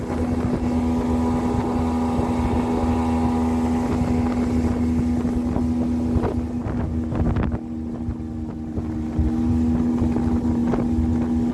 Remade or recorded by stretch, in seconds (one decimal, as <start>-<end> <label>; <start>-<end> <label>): 0.0-11.5 recorded